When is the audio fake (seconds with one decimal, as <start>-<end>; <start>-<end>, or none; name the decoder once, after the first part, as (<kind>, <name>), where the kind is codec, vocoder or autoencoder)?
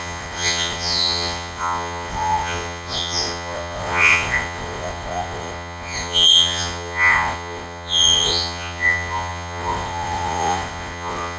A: 0.0-11.4 (vocoder, Vocos)